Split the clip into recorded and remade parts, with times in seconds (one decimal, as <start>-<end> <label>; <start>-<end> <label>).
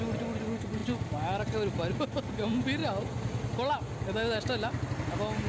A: 0.0-5.5 recorded